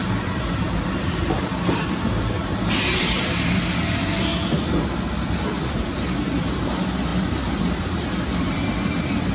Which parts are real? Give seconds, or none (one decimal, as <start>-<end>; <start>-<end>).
4.3-5.6